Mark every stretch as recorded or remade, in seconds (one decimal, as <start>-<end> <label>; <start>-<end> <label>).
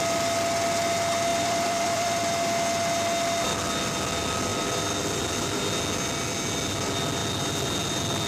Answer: 0.0-1.3 recorded; 1.3-2.2 remade; 2.2-8.3 recorded